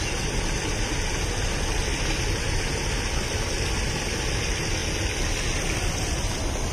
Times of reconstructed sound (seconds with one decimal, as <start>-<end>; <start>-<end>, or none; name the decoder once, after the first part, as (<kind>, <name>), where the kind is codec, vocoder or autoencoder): none